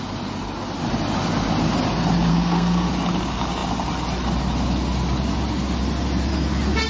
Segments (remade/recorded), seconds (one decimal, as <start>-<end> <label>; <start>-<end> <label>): 0.0-2.3 recorded; 2.3-2.9 remade; 2.9-6.9 recorded